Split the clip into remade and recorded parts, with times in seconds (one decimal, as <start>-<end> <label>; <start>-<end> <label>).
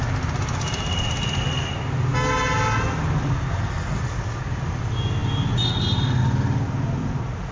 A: 0.0-7.5 recorded